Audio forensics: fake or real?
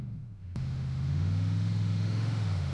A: fake